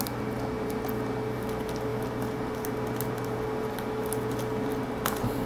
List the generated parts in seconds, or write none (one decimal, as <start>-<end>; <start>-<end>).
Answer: none